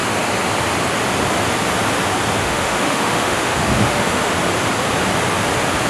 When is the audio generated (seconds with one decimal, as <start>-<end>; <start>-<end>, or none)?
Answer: 2.4-4.3